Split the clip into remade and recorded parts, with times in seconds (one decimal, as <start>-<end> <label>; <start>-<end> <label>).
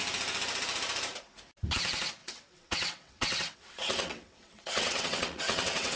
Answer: 0.0-2.2 recorded; 2.2-6.0 remade